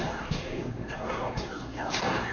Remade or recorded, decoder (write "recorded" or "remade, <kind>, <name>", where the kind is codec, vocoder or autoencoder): remade, codec, SNAC